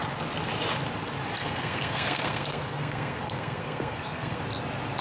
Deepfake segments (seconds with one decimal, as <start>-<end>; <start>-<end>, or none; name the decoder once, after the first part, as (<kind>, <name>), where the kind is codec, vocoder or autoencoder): 1.4-4.4 (codec, SNAC)